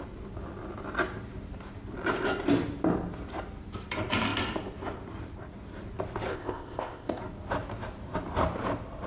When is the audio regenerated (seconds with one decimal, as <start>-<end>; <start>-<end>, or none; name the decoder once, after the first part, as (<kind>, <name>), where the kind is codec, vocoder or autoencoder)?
6.3-7.2 (codec, ZipCodec)